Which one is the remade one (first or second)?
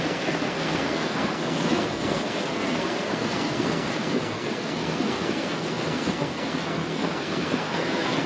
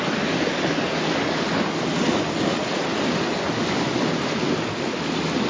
first